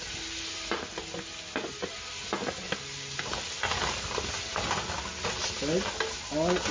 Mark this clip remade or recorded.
recorded